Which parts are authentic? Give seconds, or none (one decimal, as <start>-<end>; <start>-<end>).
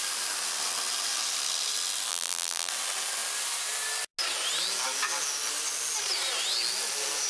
0.0-2.1; 2.7-7.3